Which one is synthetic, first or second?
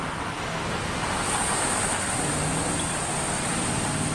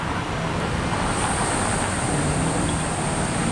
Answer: second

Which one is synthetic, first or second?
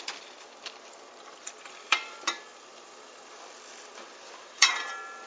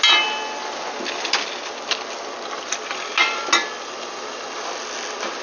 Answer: first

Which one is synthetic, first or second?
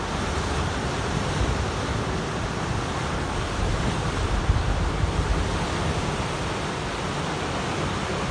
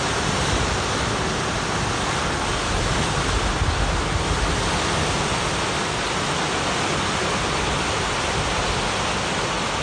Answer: first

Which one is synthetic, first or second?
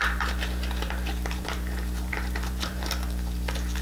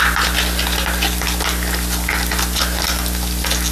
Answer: first